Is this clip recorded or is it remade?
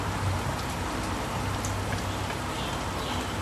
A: recorded